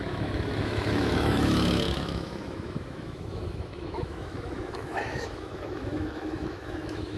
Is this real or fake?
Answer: fake